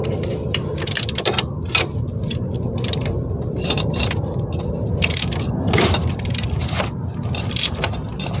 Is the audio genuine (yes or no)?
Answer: no